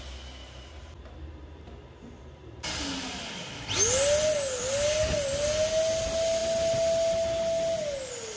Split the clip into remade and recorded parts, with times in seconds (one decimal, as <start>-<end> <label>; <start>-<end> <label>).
0.0-8.4 recorded